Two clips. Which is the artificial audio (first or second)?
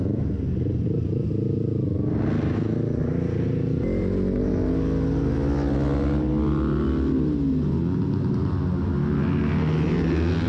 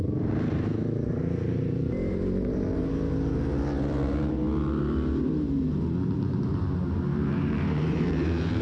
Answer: second